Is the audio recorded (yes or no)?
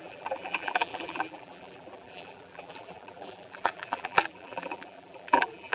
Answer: no